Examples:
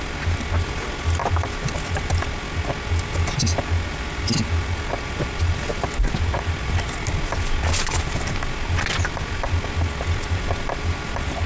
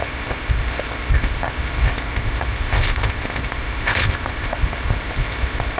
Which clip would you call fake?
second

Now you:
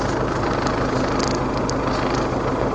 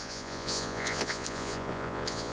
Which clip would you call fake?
second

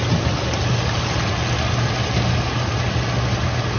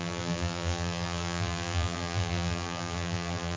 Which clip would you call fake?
second